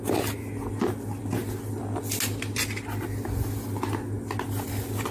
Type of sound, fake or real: real